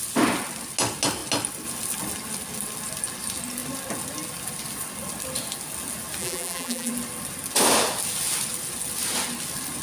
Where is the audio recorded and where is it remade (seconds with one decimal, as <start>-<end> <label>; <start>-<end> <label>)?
0.0-6.2 recorded; 6.2-6.9 remade; 6.9-9.8 recorded